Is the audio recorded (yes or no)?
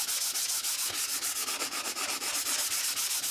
yes